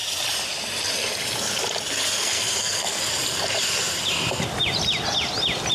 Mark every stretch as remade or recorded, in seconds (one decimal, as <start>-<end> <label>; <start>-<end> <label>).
0.0-2.2 recorded; 2.2-3.0 remade; 3.0-5.7 recorded